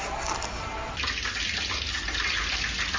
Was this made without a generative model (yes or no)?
yes